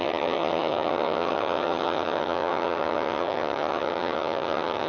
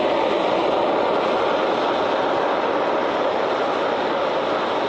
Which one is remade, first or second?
first